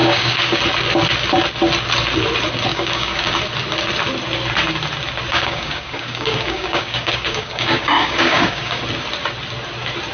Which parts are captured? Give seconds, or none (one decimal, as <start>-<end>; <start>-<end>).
0.6-2.7; 3.4-5.3; 8.8-10.1